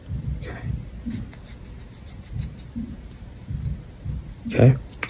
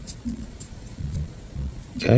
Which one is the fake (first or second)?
second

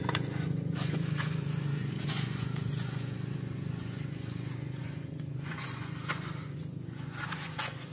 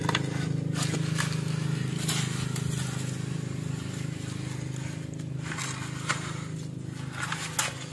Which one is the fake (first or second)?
first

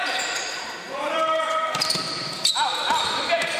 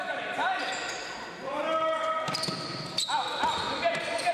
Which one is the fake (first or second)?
first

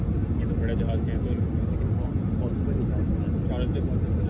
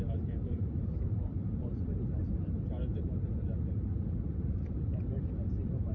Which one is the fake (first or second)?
second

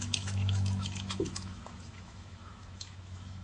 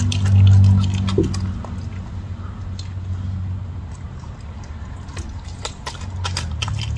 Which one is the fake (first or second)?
first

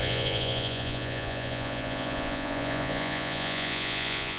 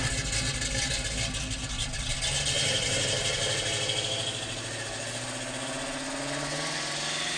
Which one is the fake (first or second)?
first